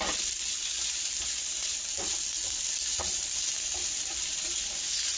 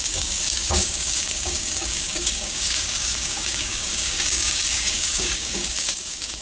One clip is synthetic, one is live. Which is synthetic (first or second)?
second